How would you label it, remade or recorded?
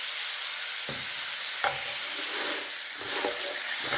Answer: recorded